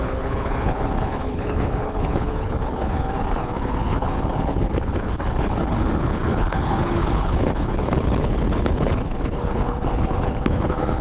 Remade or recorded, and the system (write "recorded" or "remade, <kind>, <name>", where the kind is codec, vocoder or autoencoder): remade, codec, HILCodec